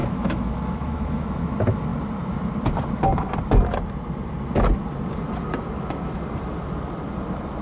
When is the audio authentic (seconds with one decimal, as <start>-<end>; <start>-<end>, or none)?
1.4-7.6